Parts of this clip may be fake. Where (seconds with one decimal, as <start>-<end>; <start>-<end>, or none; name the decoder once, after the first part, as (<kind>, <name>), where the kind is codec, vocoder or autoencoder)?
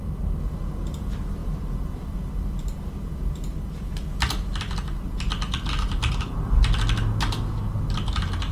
none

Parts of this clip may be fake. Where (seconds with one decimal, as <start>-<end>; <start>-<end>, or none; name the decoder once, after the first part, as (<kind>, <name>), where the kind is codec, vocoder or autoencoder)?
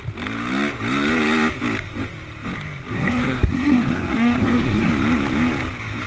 2.9-4.9 (codec, SNAC)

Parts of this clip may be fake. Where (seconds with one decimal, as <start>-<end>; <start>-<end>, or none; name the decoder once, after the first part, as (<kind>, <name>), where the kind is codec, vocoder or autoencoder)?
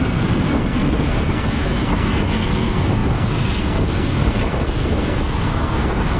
0.0-6.2 (codec, SNAC)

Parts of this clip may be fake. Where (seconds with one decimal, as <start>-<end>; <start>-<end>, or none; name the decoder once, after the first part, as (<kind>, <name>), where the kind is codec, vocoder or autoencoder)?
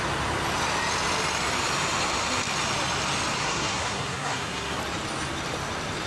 3.4-4.8 (codec, SNAC)